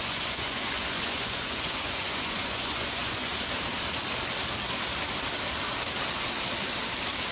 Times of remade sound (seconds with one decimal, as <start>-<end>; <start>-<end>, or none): 0.0-3.3